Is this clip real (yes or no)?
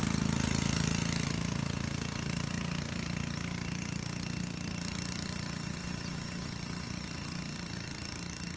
yes